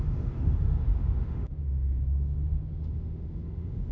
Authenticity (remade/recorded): remade